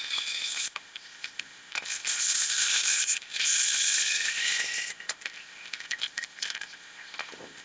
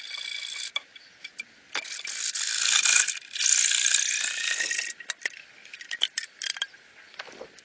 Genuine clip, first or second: second